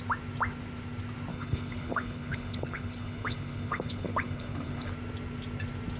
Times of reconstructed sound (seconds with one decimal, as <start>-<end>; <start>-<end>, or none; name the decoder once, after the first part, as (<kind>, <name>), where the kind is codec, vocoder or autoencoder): 1.3-4.9 (codec, HILCodec)